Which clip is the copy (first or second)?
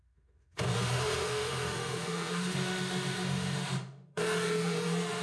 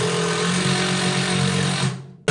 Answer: first